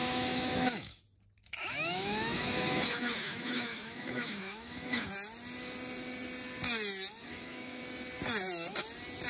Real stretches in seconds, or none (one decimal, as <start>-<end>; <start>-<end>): 1.0-1.6; 5.1-7.2; 7.8-9.3